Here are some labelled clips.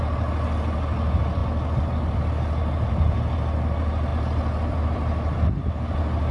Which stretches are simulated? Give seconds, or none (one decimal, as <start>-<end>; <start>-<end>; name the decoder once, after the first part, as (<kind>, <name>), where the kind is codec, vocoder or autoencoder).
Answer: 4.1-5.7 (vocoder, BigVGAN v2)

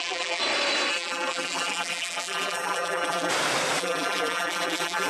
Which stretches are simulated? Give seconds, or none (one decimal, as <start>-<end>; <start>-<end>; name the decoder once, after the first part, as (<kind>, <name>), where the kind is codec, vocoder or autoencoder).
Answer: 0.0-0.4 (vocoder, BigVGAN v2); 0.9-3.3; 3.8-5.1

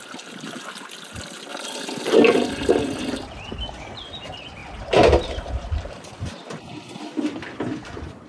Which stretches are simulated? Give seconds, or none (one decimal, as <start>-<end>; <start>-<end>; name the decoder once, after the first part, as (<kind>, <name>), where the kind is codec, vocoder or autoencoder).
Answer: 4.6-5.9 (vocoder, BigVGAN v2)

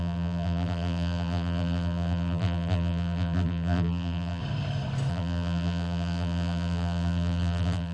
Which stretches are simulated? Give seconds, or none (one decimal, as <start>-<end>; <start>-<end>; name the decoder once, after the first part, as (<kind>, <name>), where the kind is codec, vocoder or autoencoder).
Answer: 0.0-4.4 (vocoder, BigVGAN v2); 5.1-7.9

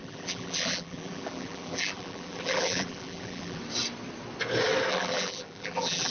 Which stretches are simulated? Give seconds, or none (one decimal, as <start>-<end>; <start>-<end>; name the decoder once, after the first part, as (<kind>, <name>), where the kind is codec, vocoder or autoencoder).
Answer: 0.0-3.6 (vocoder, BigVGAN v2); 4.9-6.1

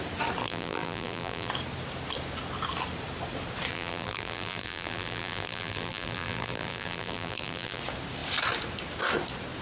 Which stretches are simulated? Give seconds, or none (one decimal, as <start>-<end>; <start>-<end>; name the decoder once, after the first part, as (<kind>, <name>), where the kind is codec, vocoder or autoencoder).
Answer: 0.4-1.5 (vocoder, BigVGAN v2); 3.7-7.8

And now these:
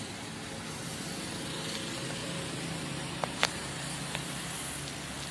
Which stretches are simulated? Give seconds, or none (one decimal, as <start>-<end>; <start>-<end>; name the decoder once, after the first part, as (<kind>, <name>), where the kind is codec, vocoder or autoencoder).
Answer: 2.2-4.7 (vocoder, BigVGAN v2)

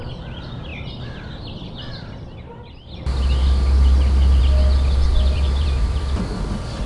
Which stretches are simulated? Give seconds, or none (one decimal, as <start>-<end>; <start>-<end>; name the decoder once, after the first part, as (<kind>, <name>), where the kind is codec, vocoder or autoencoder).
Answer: 5.1-6.0 (vocoder, BigVGAN v2)